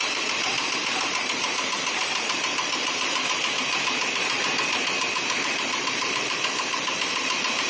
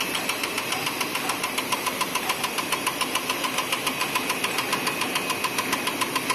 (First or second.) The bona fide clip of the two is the second